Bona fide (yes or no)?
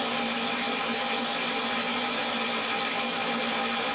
yes